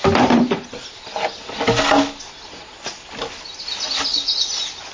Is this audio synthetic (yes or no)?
no